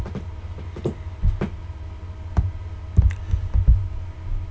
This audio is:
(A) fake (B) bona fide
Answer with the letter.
B